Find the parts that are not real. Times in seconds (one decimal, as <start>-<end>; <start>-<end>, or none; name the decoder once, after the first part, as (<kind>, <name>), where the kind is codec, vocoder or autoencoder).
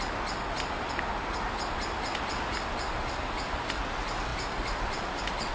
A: none